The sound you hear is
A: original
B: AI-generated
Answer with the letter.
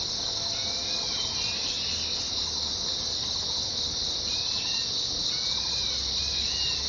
A